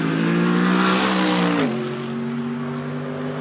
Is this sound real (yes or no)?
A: yes